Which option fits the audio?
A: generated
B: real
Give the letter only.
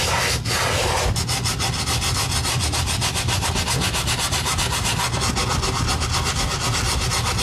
B